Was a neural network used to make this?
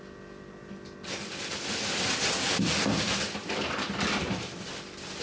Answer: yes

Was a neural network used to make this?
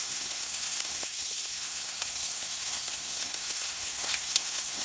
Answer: yes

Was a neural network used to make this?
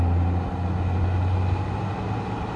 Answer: no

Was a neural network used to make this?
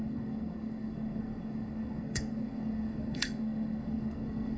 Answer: yes